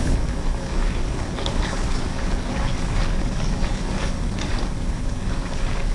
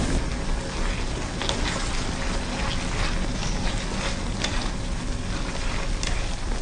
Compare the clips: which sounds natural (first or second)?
second